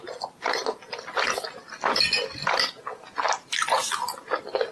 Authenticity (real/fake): real